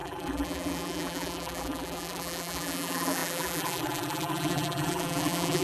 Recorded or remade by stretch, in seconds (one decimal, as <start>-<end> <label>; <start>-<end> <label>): 0.0-5.6 remade